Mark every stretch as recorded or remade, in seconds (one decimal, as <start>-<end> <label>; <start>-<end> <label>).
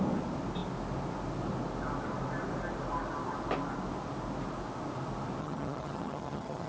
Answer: 0.0-5.4 recorded; 5.4-6.7 remade